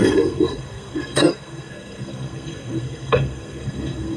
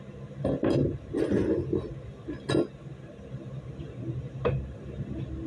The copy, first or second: first